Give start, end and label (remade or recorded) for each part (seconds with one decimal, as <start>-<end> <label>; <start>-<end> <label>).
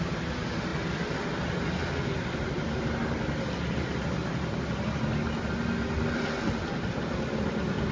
0.0-7.9 recorded